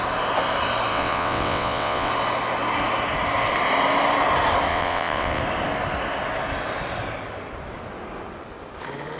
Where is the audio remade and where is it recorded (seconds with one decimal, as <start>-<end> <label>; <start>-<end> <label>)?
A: 0.0-0.9 recorded; 0.9-2.1 remade; 2.1-4.7 recorded; 4.7-5.4 remade; 5.4-9.2 recorded